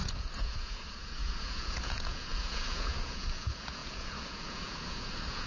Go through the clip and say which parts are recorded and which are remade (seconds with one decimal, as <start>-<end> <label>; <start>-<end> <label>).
0.0-5.5 remade